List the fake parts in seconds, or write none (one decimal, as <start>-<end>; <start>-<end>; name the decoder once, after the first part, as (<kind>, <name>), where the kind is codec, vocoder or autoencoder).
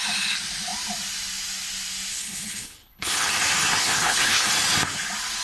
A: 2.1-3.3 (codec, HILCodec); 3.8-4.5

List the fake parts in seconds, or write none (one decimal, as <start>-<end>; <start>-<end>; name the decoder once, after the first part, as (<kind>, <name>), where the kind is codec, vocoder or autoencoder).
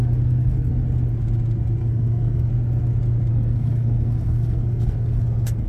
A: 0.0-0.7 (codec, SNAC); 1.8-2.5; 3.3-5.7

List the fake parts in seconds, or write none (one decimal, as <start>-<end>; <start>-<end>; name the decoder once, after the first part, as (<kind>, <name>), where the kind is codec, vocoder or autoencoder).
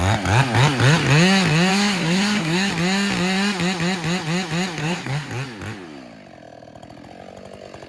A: 1.7-2.7 (codec, SNAC); 4.8-5.3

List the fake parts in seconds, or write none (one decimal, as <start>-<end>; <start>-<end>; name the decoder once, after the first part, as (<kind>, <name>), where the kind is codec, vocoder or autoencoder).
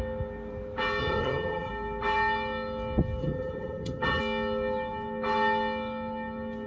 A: 1.0-1.7 (vocoder, HiFi-GAN); 3.2-4.2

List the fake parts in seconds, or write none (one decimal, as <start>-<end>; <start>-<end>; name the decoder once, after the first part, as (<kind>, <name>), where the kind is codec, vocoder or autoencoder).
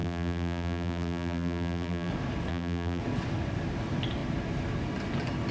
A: 0.0-2.1 (vocoder, BigVGAN v2); 2.5-3.0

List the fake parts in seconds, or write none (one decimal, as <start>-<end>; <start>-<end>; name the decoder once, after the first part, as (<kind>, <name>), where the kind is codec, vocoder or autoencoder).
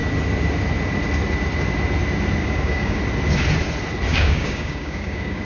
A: 2.4-3.0 (codec, DAC); 4.1-5.4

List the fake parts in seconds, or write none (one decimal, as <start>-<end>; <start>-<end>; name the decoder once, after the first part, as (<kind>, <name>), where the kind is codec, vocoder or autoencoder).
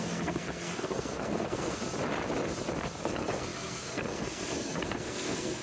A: 0.0-1.8 (codec, SNAC); 3.0-5.6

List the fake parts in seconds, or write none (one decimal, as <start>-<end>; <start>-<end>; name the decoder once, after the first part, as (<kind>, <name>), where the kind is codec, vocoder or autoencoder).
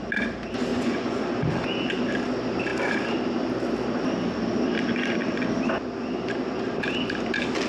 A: 0.7-1.5 (vocoder, Vocos)